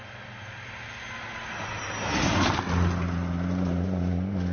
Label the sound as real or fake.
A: real